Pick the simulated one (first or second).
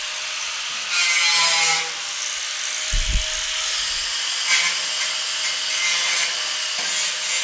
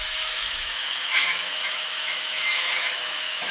second